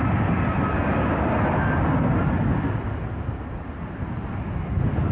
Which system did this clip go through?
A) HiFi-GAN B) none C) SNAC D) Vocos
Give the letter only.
B